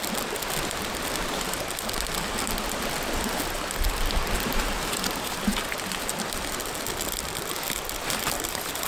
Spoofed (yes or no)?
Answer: no